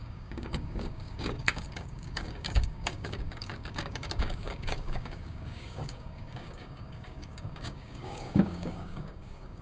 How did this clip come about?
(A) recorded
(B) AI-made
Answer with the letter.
B